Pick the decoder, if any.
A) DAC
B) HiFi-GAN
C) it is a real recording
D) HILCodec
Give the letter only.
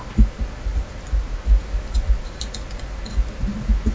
C